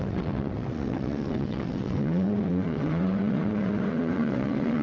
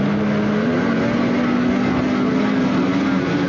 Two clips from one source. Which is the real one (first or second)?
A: second